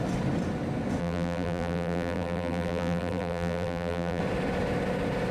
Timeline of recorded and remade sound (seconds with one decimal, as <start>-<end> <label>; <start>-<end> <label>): 0.0-1.0 recorded; 1.0-4.2 remade; 4.2-5.3 recorded